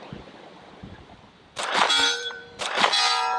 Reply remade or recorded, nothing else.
remade